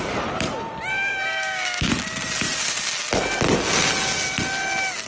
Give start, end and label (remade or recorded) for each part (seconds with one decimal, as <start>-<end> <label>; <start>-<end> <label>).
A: 0.0-0.9 recorded; 0.9-1.9 remade; 1.9-5.1 recorded